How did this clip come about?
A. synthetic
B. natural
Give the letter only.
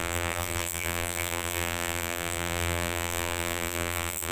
A